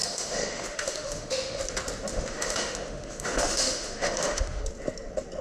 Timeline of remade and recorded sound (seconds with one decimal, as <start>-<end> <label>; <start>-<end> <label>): 0.0-1.6 remade; 1.6-2.1 recorded; 2.1-4.6 remade; 4.6-5.4 recorded